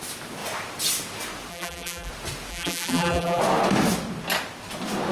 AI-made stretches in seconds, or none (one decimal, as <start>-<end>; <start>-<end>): 1.5-2.1; 2.5-3.4